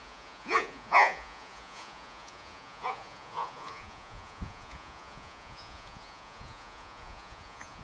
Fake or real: fake